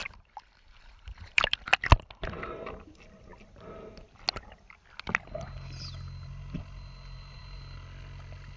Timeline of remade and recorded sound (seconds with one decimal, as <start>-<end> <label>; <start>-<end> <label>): 0.0-2.5 remade; 2.5-8.6 recorded